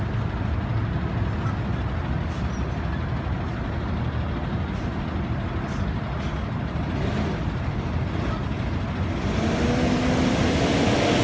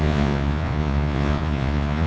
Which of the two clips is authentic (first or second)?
first